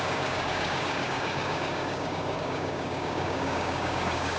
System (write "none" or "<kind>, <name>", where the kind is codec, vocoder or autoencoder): codec, DAC